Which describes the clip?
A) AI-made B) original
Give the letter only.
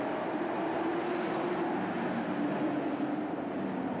B